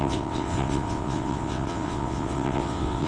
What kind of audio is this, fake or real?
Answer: fake